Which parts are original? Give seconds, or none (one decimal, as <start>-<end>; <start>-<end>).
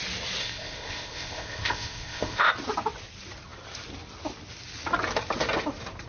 0.0-0.4; 2.5-6.1